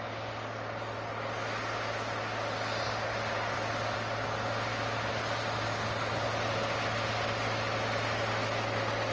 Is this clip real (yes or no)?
yes